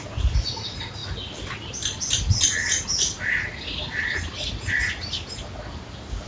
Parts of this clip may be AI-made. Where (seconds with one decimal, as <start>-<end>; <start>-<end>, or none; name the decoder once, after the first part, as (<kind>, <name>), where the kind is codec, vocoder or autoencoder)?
none